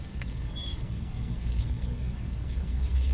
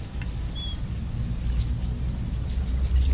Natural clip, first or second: second